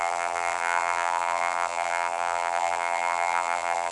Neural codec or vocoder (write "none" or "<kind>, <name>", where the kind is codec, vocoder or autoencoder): vocoder, BigVGAN v2